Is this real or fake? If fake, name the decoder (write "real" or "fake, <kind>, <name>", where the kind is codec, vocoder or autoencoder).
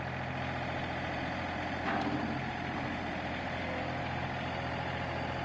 real